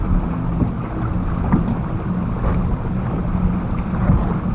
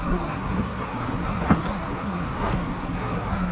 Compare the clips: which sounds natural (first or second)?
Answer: first